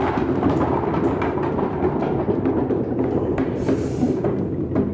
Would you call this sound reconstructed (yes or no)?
no